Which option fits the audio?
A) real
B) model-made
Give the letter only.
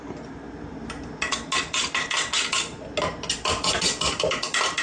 A